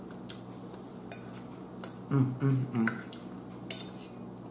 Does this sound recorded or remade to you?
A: recorded